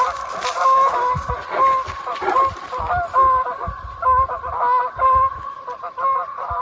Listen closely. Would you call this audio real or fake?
real